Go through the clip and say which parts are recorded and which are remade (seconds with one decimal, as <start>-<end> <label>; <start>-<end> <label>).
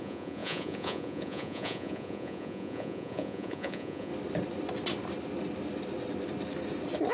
0.0-4.1 remade; 4.1-7.1 recorded